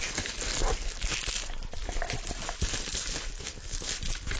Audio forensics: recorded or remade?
recorded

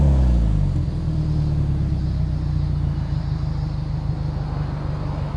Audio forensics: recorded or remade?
recorded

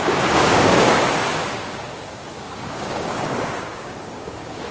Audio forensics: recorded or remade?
remade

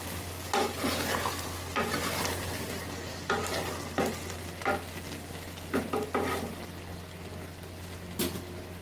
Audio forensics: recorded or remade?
recorded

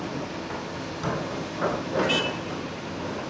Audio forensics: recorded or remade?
recorded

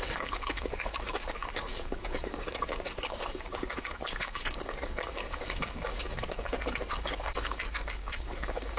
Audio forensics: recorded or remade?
remade